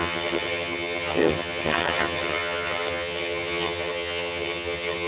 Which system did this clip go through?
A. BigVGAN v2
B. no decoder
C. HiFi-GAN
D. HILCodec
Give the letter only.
C